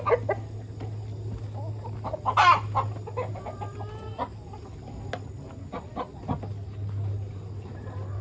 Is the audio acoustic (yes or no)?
yes